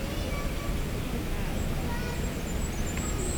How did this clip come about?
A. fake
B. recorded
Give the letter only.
B